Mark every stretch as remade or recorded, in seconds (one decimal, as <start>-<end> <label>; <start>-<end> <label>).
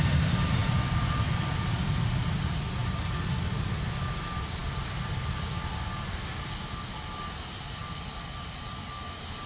0.0-4.6 recorded; 4.6-5.7 remade; 5.7-9.5 recorded